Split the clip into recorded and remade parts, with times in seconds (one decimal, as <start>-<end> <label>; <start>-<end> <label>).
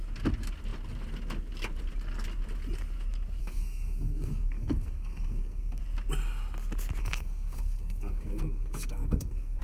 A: 0.0-3.4 recorded; 3.4-5.8 remade; 5.8-7.0 recorded; 7.0-9.6 remade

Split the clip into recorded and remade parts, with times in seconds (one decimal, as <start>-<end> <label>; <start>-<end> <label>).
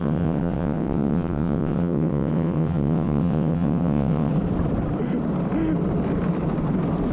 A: 0.0-4.3 remade; 4.3-7.1 recorded